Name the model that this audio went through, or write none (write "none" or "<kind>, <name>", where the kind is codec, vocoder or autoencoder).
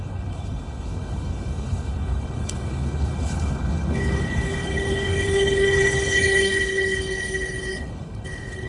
codec, HILCodec